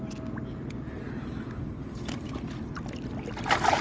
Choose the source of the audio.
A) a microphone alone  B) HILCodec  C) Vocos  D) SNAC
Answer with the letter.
A